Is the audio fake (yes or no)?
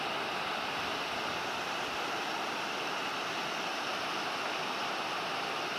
no